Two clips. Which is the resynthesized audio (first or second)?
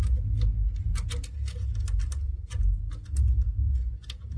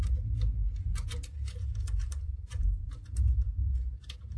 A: second